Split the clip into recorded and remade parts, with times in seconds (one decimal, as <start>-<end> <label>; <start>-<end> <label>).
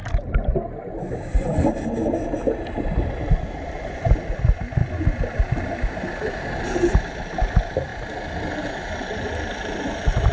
0.0-10.3 recorded